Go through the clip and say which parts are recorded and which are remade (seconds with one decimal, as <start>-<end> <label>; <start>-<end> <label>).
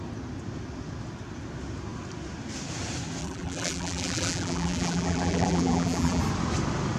0.0-3.2 recorded; 3.2-6.2 remade; 6.2-7.0 recorded